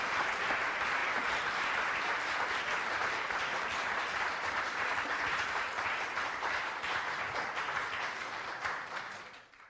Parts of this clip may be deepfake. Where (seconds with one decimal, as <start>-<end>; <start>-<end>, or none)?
1.0-6.3; 8.2-9.7